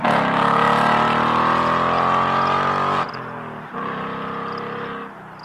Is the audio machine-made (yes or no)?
no